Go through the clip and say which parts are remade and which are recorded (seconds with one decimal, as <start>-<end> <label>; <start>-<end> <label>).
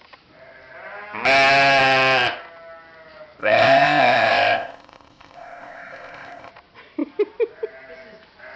0.0-3.4 recorded; 3.4-6.5 remade; 6.5-8.6 recorded